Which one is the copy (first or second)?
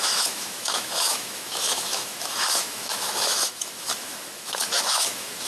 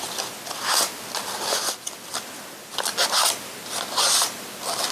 first